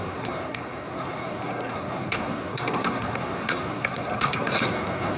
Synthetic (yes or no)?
yes